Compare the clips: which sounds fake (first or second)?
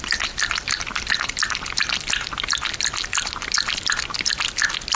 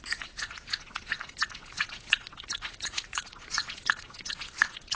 second